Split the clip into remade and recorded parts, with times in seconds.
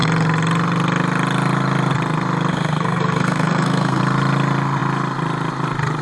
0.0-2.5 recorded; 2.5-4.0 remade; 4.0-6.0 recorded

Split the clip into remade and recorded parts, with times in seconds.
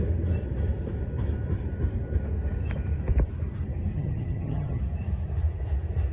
0.0-3.9 recorded; 3.9-4.8 remade; 4.8-6.1 recorded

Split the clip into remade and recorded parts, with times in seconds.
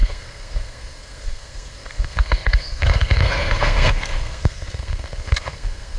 0.0-6.0 remade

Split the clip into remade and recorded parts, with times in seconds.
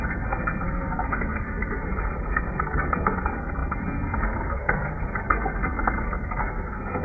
0.0-7.0 remade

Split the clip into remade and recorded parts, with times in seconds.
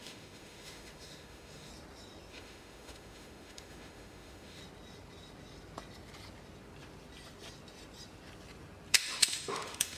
0.0-1.7 remade; 1.7-2.3 recorded; 2.3-4.6 remade; 4.6-8.9 recorded; 8.9-10.0 remade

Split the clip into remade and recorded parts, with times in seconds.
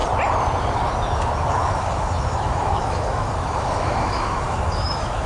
0.0-1.5 recorded; 1.5-5.3 remade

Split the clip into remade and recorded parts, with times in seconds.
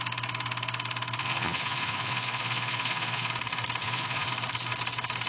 0.0-1.2 recorded; 1.2-3.3 remade; 3.3-3.8 recorded; 3.8-4.3 remade; 4.3-5.3 recorded